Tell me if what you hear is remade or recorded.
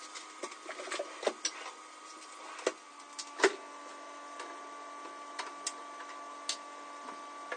recorded